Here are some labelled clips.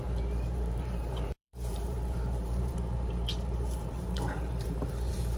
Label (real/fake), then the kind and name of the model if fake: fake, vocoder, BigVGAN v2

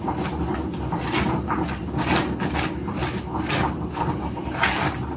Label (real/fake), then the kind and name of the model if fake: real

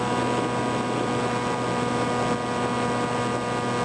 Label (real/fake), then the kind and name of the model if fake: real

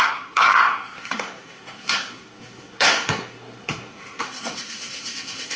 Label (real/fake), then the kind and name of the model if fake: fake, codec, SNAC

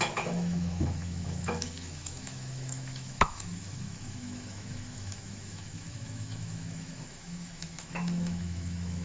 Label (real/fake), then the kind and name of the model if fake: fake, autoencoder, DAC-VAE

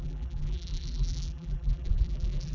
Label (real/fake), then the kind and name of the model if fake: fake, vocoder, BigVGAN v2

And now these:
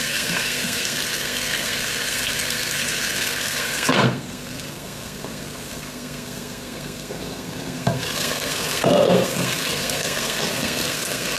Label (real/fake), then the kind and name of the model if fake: fake, codec, SNAC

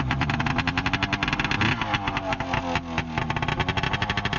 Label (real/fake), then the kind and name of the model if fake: real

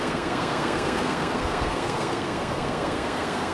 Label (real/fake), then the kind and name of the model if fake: fake, codec, SNAC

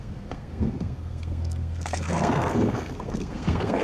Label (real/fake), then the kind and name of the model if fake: fake, codec, SNAC